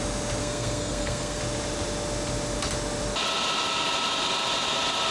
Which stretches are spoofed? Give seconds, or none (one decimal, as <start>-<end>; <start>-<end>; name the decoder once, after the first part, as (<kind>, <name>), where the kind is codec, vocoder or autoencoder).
0.4-1.4 (codec, SNAC)